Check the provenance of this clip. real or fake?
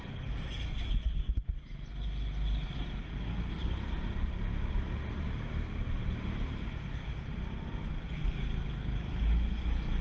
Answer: real